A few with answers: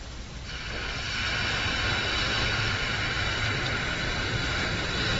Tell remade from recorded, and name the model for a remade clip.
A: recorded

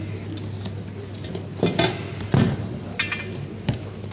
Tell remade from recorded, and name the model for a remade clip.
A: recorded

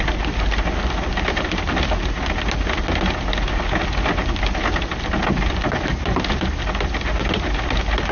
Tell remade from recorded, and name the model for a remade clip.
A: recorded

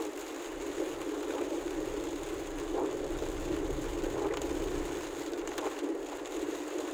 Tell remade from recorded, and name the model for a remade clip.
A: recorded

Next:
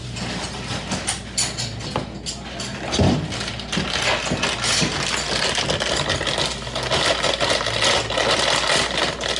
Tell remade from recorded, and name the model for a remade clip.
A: recorded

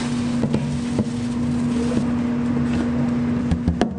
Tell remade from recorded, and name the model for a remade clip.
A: recorded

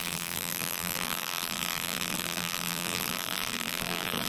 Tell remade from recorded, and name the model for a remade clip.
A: remade, vocoder, BigVGAN v2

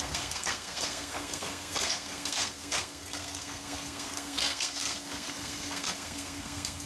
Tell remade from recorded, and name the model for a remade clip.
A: remade, codec, SNAC